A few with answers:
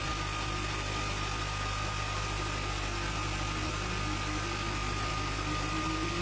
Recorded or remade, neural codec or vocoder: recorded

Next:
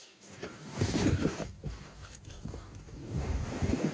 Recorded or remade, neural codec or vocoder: remade, codec, DAC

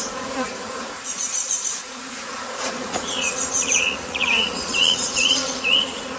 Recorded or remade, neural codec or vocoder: remade, vocoder, Vocos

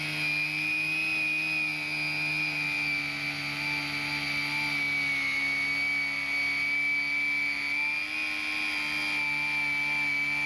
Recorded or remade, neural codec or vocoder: recorded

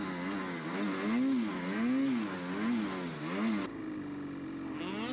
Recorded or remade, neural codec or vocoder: recorded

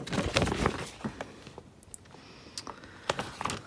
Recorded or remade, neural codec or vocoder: recorded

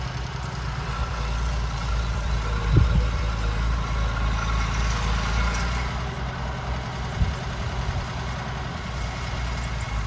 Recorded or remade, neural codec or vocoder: recorded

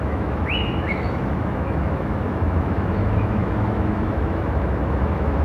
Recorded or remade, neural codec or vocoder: remade, autoencoder, DAC-VAE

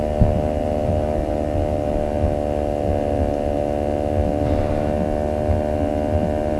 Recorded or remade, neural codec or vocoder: recorded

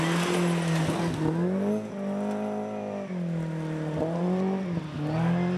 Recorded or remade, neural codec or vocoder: recorded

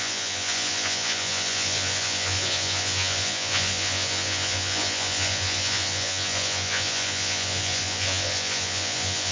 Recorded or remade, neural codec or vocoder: remade, vocoder, Vocos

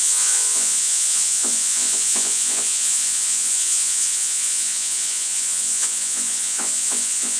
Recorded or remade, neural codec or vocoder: remade, vocoder, Vocos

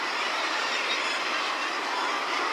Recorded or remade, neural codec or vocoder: remade, vocoder, BigVGAN v2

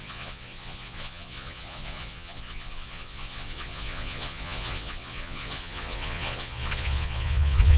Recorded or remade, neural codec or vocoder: remade, vocoder, Vocos